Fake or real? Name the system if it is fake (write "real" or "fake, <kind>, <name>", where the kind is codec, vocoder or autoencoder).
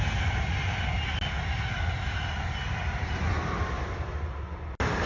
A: real